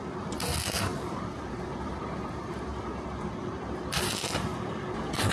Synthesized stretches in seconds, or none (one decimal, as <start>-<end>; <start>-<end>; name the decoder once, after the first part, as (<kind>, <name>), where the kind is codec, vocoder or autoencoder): 0.9-4.1 (vocoder, BigVGAN v2)